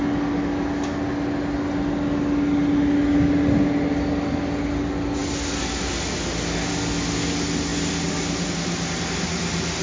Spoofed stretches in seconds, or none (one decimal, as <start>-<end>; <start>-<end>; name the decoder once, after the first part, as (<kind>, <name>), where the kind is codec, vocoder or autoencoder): none